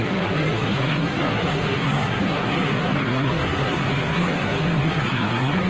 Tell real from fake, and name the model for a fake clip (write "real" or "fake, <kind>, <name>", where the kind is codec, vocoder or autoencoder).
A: fake, codec, SNAC